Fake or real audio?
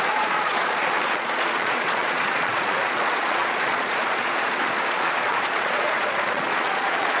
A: fake